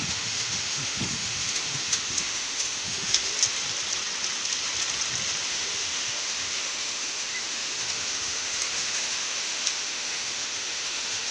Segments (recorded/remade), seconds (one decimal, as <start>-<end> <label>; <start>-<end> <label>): 0.0-3.3 remade; 3.3-5.5 recorded; 5.5-11.3 remade